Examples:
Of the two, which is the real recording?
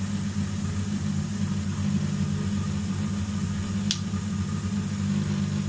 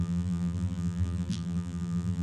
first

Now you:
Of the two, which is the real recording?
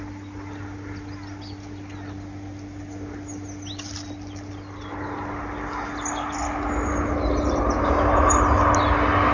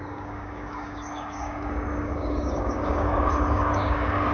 first